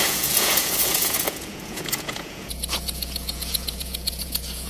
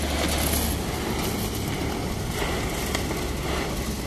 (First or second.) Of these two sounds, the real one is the second